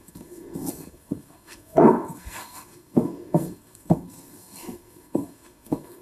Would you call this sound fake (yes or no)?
yes